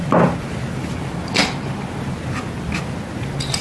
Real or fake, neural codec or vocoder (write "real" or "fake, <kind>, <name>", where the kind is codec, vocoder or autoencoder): real